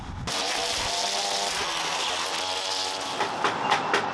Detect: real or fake real